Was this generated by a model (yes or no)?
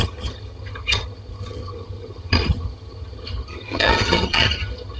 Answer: yes